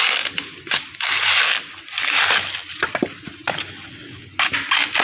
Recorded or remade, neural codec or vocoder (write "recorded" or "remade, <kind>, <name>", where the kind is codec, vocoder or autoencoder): recorded